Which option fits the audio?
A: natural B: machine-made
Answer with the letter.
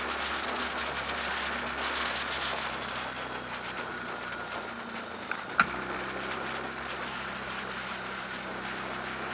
A